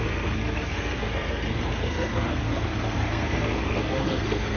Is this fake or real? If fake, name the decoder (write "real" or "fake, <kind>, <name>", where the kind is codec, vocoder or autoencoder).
fake, codec, SNAC